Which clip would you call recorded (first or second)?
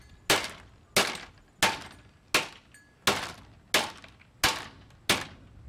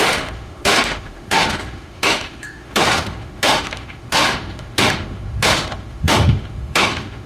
first